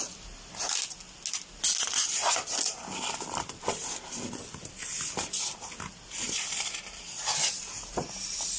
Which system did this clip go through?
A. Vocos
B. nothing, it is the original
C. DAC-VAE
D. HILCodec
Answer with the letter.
B